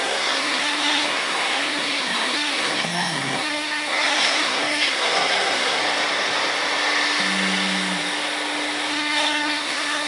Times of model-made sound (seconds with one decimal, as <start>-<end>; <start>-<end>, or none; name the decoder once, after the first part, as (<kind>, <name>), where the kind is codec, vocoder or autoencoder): 0.0-5.8 (codec, SNAC); 8.9-10.1